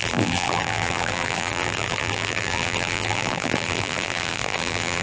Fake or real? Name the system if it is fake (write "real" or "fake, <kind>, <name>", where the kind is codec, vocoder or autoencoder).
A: fake, vocoder, BigVGAN v2